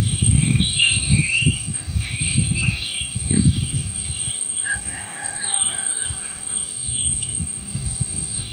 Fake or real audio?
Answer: fake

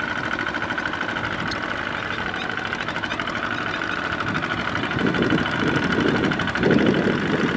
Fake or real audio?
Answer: real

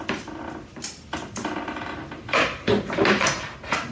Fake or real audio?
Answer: real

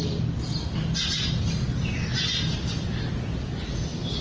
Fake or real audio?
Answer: real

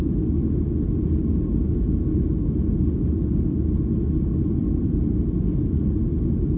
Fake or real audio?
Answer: real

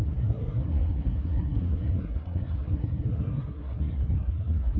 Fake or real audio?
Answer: fake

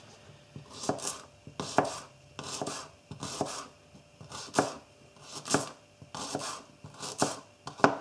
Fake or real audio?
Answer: real